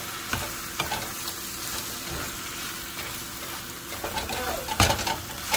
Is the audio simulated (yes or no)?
no